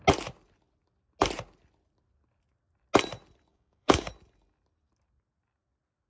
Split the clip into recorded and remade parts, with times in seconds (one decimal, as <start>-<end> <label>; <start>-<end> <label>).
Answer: 0.0-3.5 recorded; 3.5-4.1 remade; 4.1-6.1 recorded